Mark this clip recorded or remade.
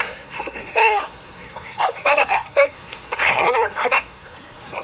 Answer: remade